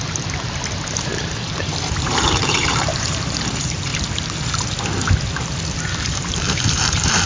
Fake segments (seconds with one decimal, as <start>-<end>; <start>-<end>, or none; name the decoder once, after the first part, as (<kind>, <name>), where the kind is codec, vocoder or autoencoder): 0.0-3.9 (vocoder, BigVGAN v2); 5.9-7.3